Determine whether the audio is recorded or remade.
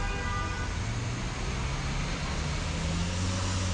recorded